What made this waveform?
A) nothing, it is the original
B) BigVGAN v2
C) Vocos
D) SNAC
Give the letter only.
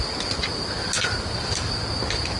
A